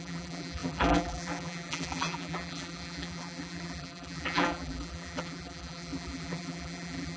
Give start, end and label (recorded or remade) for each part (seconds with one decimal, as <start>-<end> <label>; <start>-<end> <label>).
0.0-7.2 remade